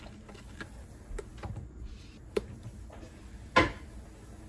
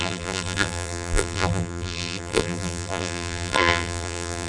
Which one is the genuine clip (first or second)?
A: first